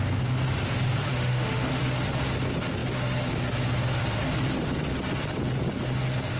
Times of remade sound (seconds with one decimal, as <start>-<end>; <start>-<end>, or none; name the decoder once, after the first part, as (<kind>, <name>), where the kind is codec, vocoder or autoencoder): 1.1-1.8 (autoencoder, DAC-VAE)